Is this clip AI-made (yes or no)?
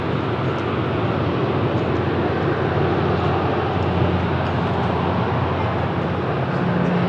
no